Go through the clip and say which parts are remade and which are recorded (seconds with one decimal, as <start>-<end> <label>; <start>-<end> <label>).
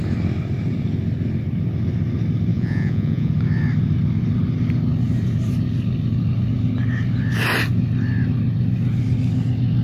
0.0-2.5 recorded; 2.5-3.3 remade; 3.3-9.8 recorded